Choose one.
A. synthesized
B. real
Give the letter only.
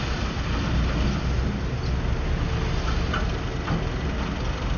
B